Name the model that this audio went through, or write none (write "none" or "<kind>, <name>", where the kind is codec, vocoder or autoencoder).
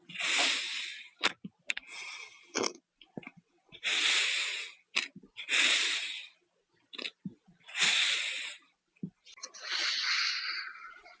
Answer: none